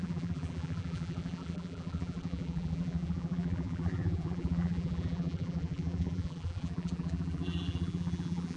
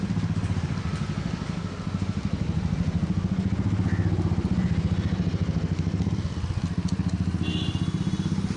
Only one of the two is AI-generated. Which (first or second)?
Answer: first